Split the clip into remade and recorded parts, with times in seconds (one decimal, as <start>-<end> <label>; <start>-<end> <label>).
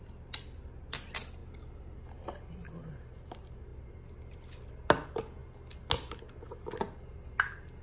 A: 0.0-7.8 recorded